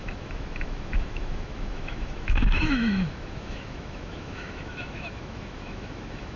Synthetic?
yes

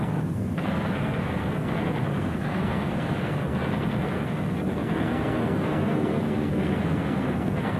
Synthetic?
yes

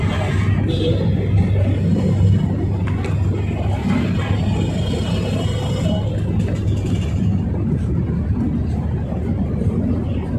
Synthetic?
no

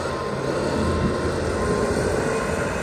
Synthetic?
no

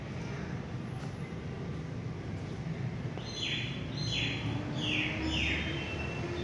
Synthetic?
no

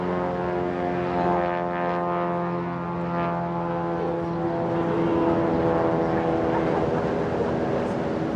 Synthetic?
no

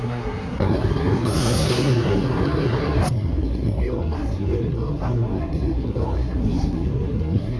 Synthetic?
yes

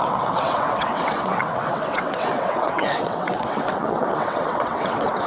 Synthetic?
yes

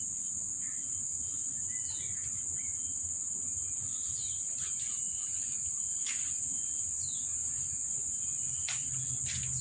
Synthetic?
no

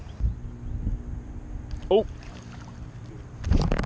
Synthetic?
no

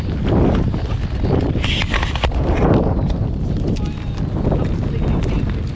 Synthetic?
no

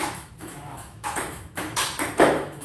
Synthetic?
yes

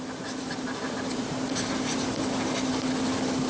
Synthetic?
no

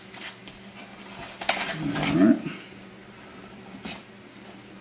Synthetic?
no